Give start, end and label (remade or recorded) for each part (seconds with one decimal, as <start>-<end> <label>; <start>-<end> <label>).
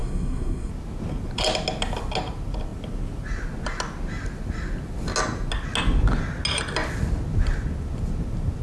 0.0-0.7 remade; 0.7-8.6 recorded